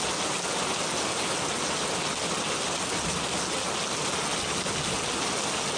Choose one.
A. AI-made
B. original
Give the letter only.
B